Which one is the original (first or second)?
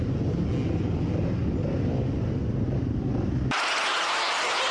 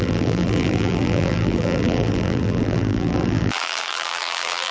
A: first